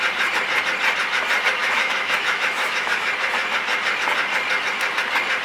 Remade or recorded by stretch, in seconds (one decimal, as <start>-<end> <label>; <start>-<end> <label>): 0.0-1.6 recorded; 1.6-3.1 remade; 3.1-5.4 recorded